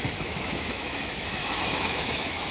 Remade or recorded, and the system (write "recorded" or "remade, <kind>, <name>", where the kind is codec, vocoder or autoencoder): remade, autoencoder, DAC-VAE